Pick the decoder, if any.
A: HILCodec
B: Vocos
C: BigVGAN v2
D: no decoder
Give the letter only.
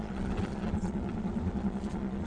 B